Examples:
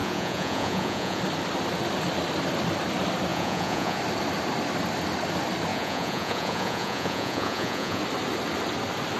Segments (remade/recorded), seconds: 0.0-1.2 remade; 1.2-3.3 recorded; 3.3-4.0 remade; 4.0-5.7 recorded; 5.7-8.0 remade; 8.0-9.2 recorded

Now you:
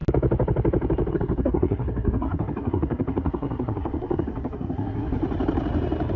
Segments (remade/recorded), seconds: 0.0-1.1 recorded; 1.1-5.2 remade; 5.2-6.2 recorded

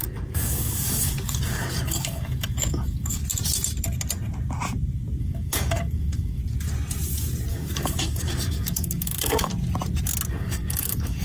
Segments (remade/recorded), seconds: 0.0-3.2 remade; 3.2-5.2 recorded; 5.2-6.4 remade; 6.4-7.5 recorded; 7.5-9.5 remade; 9.5-10.3 recorded; 10.3-11.2 remade

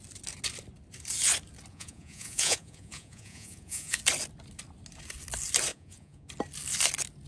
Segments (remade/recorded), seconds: 0.0-1.7 recorded; 1.7-4.0 remade; 4.0-5.7 recorded; 5.7-6.3 remade; 6.3-7.3 recorded

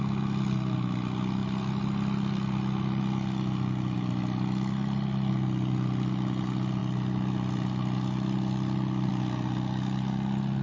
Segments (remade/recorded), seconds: 0.0-10.6 recorded